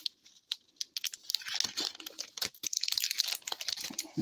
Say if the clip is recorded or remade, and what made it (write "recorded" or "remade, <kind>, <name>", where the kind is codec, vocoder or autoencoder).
recorded